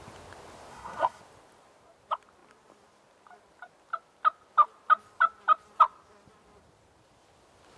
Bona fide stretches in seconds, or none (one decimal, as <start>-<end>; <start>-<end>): 0.0-0.7; 1.2-7.8